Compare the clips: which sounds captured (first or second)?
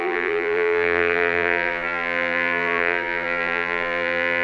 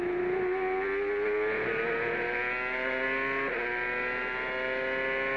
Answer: second